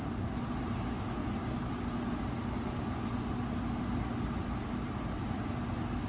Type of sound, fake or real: real